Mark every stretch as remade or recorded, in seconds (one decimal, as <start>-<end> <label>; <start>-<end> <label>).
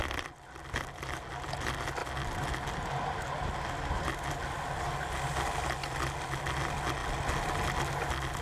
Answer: 0.0-8.4 recorded